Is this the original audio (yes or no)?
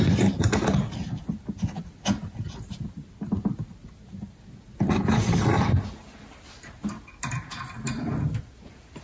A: yes